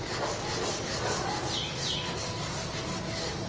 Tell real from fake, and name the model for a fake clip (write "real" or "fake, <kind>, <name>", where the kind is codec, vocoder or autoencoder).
real